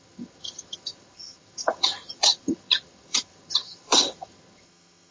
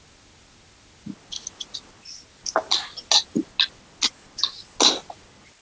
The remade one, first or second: first